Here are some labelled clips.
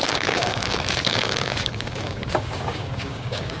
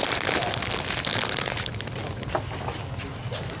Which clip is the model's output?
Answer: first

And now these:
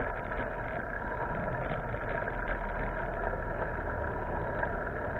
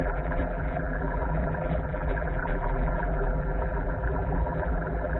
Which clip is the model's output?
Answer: second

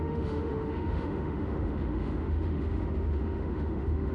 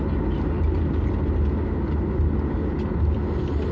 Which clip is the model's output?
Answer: first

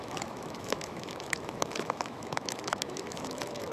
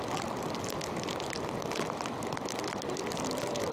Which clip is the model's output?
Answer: first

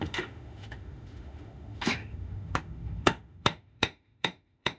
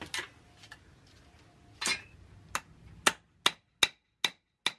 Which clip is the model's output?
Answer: first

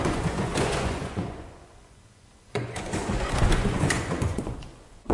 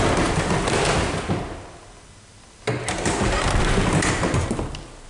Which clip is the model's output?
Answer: first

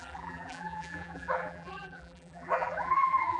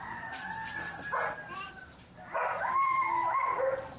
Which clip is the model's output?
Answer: first